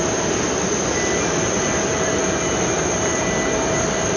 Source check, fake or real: real